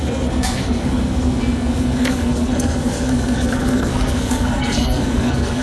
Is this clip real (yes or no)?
no